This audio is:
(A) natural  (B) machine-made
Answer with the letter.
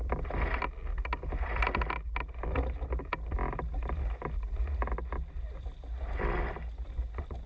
A